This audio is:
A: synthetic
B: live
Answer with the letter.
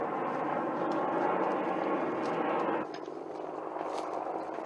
B